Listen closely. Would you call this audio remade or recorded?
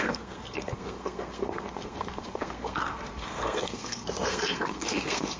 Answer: remade